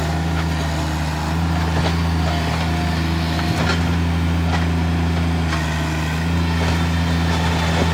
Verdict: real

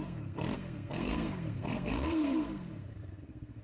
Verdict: fake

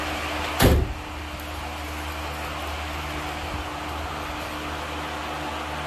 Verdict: real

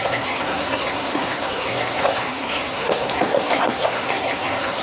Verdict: fake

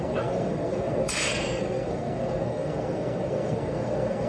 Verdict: fake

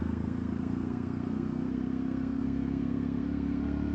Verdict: fake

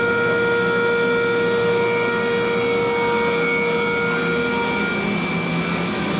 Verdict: real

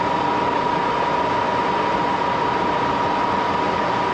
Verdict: real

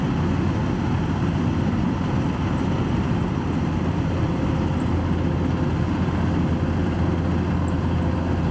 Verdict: real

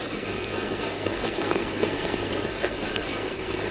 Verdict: fake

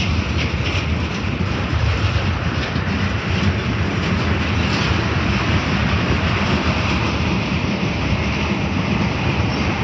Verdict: real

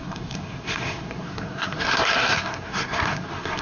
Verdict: fake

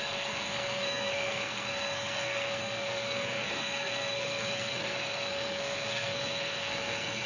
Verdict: fake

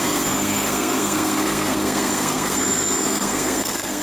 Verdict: fake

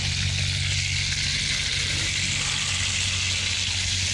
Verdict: real